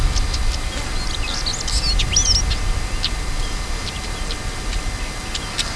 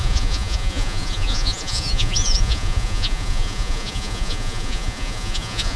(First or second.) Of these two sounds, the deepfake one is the second